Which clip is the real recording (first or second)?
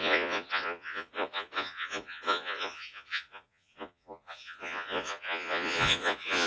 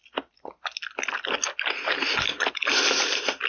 second